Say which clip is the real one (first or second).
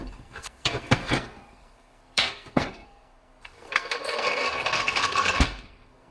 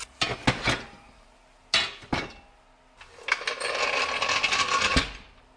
second